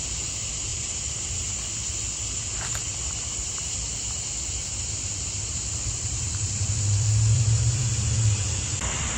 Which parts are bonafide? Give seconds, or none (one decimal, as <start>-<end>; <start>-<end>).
0.0-0.7; 1.5-2.7; 7.8-9.2

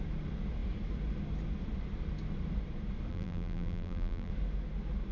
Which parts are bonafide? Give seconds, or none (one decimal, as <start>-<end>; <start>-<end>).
0.0-3.1; 4.3-5.1

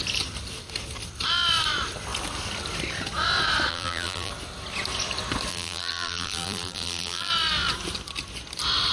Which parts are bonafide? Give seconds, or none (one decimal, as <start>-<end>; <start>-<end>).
0.0-3.7; 4.3-5.5; 7.3-8.9